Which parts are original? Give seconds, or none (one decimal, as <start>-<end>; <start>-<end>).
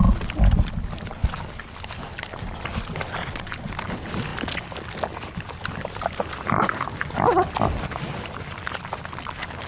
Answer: 0.0-9.7